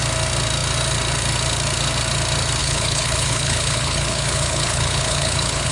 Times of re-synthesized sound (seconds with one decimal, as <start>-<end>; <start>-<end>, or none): 2.6-5.7

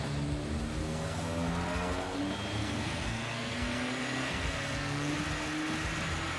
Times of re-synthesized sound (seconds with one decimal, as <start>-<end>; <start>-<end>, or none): 0.8-2.2; 2.6-5.1

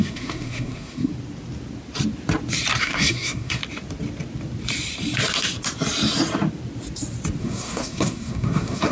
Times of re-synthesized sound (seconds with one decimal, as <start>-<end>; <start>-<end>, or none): 0.0-1.1; 2.8-3.6; 7.4-8.9

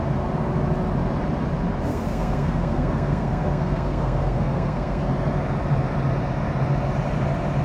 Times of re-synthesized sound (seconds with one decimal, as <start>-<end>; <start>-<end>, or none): 1.9-5.0